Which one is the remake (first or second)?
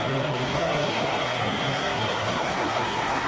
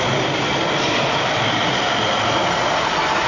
first